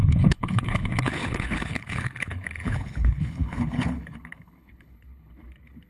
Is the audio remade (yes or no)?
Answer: yes